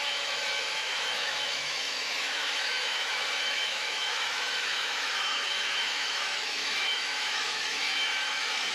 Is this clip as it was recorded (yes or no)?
no